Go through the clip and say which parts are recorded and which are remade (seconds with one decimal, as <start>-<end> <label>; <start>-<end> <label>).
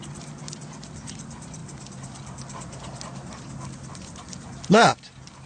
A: 0.0-5.5 recorded